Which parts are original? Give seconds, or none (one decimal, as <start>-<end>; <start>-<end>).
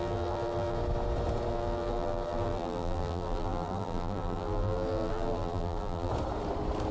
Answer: 0.8-1.5; 6.1-6.9